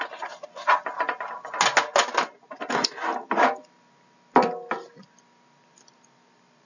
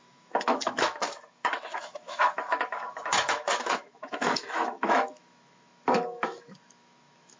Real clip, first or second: first